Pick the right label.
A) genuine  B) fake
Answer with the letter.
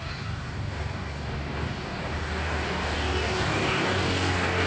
B